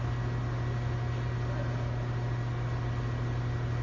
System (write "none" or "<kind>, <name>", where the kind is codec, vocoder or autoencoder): none